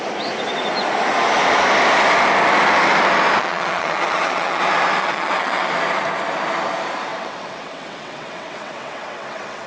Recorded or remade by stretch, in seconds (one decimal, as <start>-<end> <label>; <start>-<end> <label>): 0.0-3.4 recorded; 3.4-4.6 remade; 4.6-5.0 recorded; 5.0-5.7 remade; 5.7-7.1 recorded; 7.1-9.7 remade